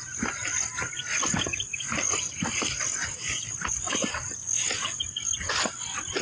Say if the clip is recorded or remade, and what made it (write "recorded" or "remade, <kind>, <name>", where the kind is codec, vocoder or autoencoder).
remade, vocoder, BigVGAN v2